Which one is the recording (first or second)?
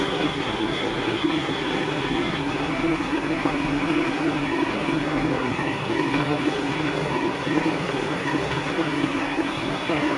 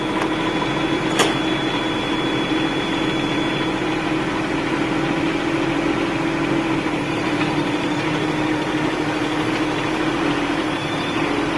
second